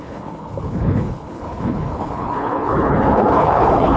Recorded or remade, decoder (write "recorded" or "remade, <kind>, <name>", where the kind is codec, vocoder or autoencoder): remade, codec, HILCodec